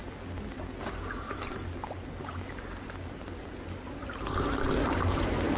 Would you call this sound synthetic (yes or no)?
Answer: no